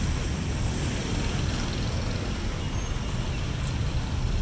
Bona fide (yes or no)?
yes